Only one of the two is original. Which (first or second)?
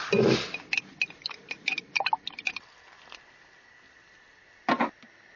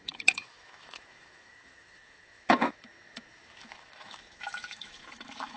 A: first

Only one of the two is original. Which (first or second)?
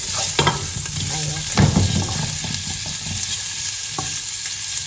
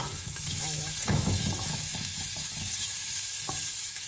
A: first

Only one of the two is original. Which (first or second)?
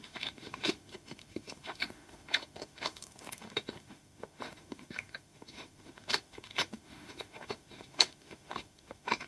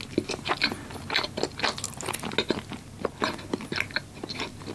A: second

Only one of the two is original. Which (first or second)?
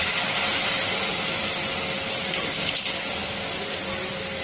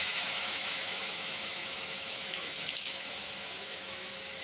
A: first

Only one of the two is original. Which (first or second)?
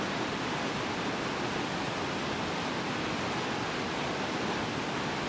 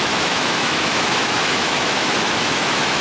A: first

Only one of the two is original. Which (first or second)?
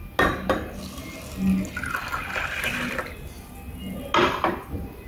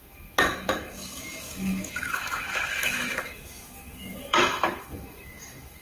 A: first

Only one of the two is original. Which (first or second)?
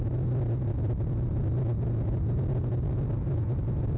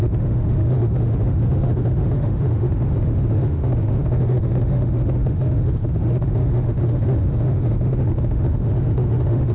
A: first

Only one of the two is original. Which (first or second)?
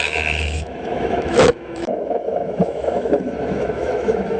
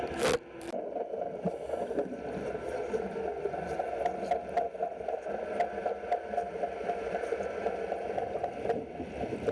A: second